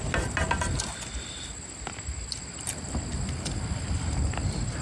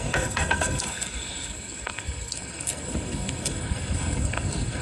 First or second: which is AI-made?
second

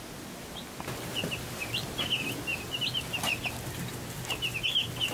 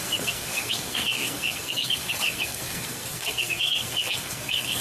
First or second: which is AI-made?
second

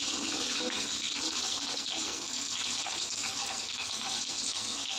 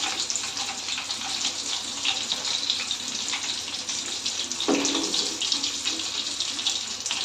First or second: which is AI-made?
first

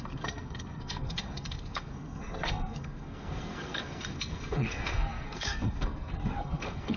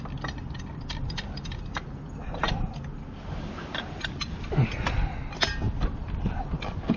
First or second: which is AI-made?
first